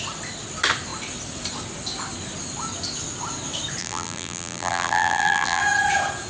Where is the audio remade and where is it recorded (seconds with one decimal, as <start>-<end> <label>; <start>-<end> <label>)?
0.0-3.8 recorded; 3.8-5.6 remade; 5.6-6.3 recorded